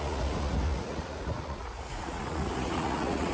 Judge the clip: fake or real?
fake